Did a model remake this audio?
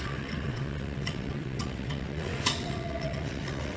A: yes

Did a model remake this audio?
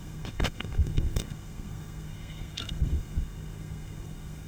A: yes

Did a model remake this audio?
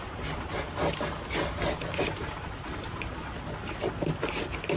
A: no